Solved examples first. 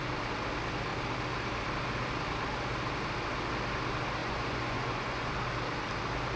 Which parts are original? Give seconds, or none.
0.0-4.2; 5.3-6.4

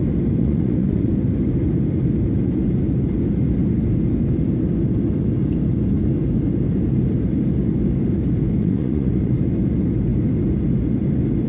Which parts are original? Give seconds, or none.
0.0-0.4; 1.1-8.6; 9.3-11.5